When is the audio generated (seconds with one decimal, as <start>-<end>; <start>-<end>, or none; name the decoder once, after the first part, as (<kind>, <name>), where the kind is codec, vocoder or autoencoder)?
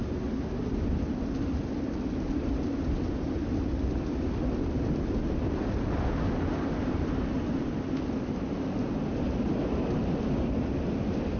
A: none